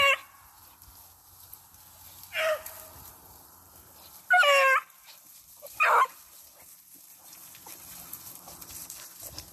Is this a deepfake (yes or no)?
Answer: no